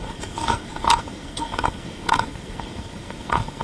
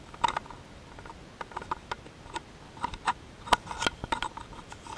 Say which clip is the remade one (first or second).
first